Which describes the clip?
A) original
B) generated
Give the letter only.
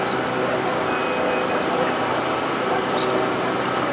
A